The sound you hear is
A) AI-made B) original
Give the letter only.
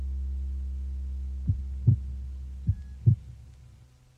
B